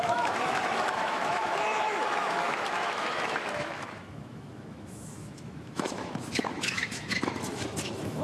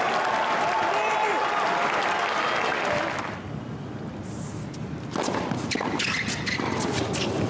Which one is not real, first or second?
first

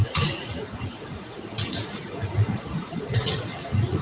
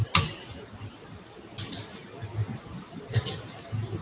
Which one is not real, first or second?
first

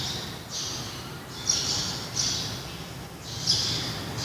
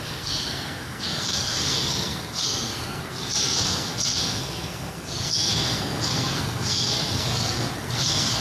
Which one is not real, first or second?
second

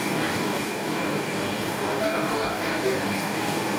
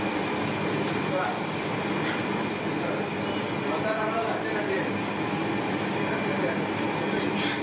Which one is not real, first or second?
first